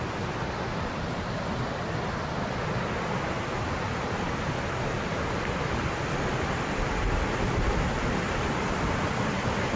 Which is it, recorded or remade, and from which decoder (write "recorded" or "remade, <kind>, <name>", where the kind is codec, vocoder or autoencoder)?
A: recorded